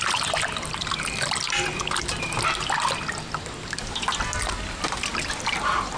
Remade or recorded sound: recorded